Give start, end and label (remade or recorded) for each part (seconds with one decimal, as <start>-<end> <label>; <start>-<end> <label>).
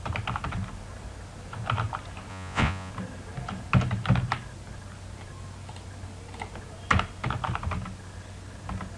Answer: 0.0-2.3 recorded; 2.3-2.9 remade; 2.9-9.0 recorded